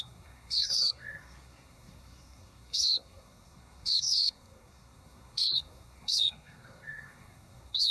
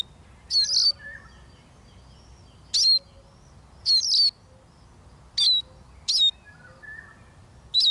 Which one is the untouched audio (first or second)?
second